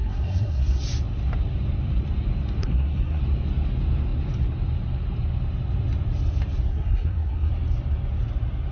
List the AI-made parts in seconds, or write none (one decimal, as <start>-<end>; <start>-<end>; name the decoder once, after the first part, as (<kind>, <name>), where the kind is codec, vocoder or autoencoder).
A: 0.0-0.8 (codec, SNAC); 2.6-3.2; 6.7-7.5